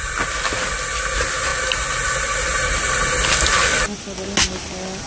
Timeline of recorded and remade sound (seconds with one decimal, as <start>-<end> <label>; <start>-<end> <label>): 0.0-5.1 recorded